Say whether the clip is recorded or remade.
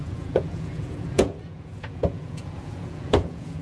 remade